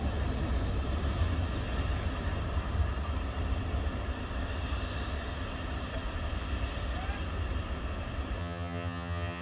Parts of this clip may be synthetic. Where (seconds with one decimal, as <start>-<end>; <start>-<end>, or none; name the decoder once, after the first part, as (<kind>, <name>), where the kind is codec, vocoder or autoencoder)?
8.4-9.4 (vocoder, HiFi-GAN)